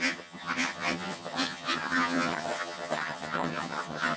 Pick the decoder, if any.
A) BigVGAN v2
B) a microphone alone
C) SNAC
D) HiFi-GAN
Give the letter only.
D